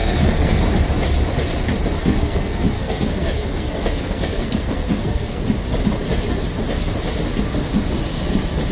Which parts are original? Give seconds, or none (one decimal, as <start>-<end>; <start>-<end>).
0.6-2.0; 5.4-8.7